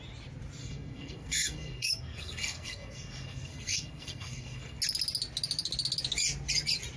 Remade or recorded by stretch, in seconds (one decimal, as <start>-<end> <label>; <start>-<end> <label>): 0.0-0.6 recorded; 0.6-4.8 remade; 4.8-7.0 recorded